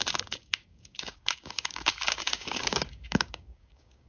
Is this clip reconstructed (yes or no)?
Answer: yes